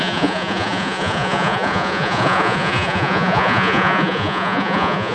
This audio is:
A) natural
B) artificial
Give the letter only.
B